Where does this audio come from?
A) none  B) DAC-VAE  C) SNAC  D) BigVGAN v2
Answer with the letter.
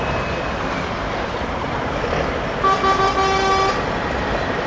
A